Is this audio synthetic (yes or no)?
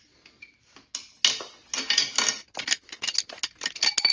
no